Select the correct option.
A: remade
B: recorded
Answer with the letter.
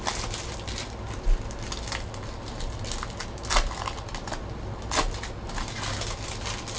B